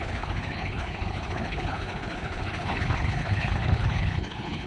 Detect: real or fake fake